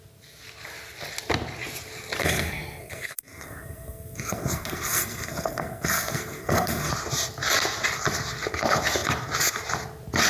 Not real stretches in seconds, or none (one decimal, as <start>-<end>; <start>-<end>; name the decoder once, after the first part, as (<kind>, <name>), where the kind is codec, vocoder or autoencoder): 2.2-6.9 (codec, SNAC)